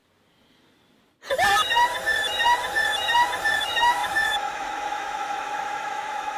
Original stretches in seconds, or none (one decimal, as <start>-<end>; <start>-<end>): 0.0-3.6